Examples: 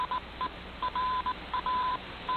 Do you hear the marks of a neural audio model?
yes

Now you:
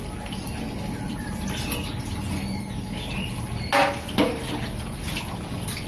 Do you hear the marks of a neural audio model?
no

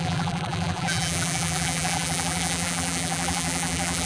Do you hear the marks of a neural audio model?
yes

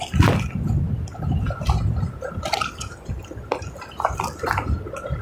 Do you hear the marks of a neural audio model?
no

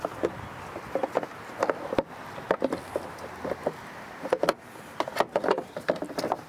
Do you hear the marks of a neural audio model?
no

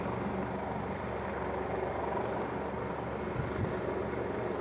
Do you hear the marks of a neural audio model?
no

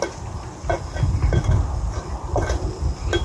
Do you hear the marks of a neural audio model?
no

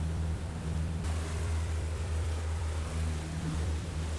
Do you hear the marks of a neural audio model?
yes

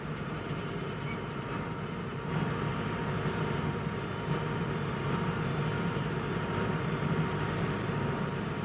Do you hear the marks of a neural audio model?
yes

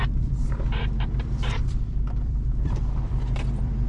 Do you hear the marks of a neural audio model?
yes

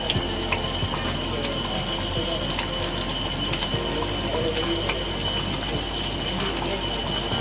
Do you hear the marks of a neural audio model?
no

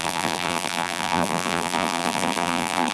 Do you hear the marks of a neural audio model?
yes